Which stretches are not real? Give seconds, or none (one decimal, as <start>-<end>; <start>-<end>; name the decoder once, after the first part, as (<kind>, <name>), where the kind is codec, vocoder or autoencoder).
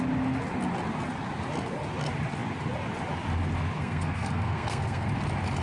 3.8-5.1 (codec, SNAC)